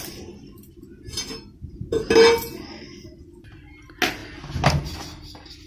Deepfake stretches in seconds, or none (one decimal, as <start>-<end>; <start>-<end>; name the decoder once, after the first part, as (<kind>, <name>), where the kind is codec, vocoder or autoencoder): none